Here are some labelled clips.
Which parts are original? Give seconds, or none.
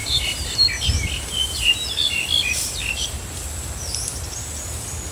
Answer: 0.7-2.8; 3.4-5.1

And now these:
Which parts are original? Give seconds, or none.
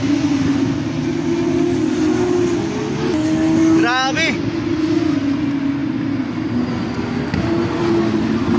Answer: 0.0-8.6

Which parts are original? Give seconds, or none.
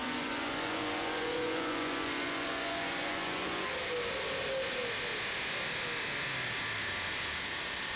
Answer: 3.7-8.0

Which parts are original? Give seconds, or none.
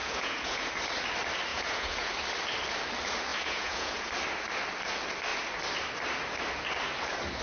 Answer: 0.7-1.5; 2.1-3.3; 4.1-7.4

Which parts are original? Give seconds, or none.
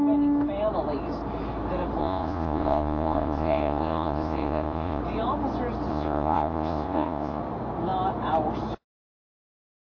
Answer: 0.0-2.0; 5.0-5.9; 7.4-9.9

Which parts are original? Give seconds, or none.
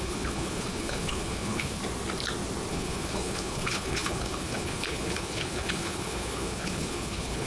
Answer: 1.8-2.7